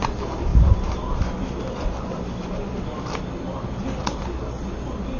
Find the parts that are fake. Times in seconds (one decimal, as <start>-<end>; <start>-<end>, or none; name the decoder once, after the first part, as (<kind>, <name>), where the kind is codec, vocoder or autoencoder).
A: none